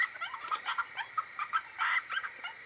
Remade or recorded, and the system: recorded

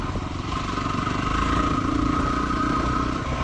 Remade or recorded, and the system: remade, vocoder, BigVGAN v2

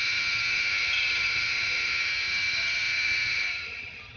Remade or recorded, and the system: remade, vocoder, HiFi-GAN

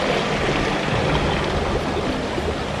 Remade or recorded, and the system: recorded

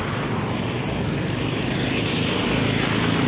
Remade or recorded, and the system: recorded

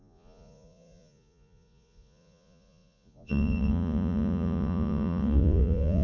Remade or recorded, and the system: remade, vocoder, Vocos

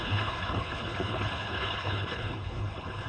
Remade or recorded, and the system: remade, codec, HILCodec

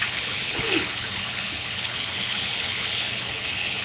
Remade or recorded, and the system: remade, codec, HILCodec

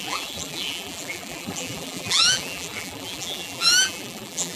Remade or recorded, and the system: remade, vocoder, BigVGAN v2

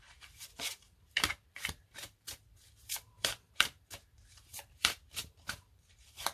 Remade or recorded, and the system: remade, vocoder, BigVGAN v2